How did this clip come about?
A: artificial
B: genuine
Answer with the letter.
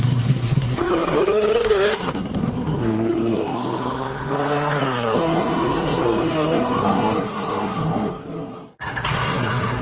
A